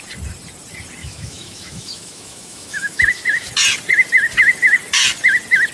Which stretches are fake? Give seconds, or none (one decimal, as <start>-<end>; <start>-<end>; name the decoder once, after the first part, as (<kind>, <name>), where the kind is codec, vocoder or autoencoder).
1.0-3.5 (autoencoder, DAC-VAE)